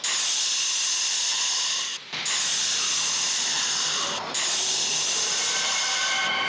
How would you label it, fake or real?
real